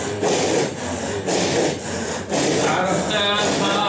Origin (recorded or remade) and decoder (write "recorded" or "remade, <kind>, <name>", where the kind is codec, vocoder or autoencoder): recorded